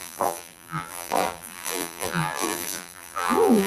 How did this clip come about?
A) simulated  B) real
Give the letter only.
A